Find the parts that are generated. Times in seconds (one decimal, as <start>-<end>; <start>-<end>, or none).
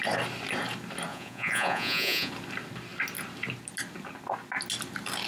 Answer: 1.1-2.3